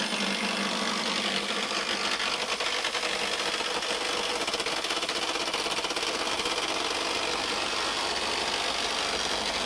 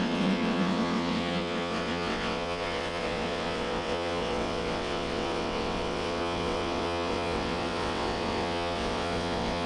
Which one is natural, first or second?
first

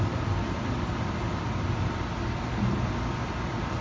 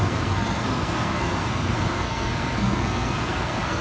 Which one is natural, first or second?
first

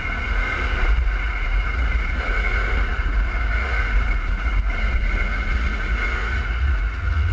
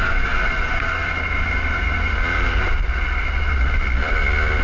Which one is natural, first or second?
second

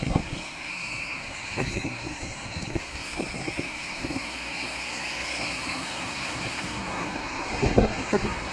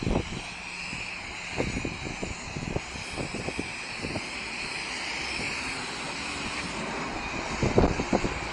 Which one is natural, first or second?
second